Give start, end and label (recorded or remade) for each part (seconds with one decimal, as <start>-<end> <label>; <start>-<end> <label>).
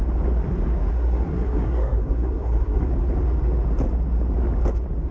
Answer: 0.0-0.9 recorded; 0.9-2.9 remade; 2.9-5.1 recorded